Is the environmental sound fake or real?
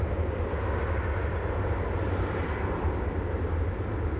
real